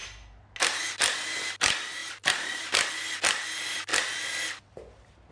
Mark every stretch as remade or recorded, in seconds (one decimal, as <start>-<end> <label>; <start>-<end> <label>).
0.0-2.0 recorded; 2.0-2.6 remade; 2.6-5.3 recorded